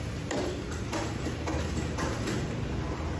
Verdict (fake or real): real